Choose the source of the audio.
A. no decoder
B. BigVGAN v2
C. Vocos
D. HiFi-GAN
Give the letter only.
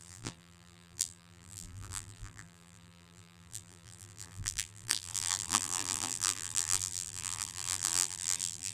B